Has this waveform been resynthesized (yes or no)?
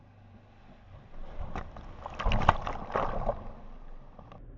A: no